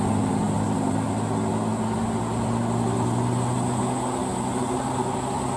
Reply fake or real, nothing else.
real